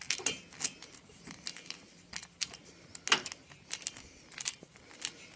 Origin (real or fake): real